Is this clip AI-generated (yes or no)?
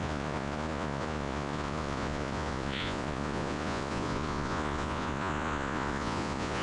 yes